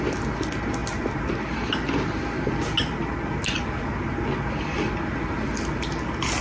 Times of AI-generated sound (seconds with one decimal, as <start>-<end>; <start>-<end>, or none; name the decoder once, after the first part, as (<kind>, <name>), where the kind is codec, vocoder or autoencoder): none